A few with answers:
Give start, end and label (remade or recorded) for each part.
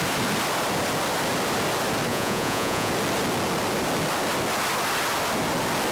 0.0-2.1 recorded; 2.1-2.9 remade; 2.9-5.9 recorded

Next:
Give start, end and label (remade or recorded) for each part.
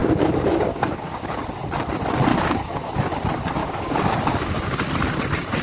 0.0-1.4 remade; 1.4-2.3 recorded; 2.3-2.9 remade; 2.9-3.6 recorded; 3.6-4.8 remade; 4.8-5.6 recorded